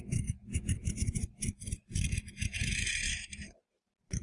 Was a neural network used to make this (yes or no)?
yes